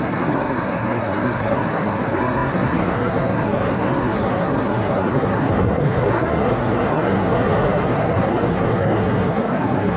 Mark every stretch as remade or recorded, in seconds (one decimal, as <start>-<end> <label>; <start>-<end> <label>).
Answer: 0.0-10.0 remade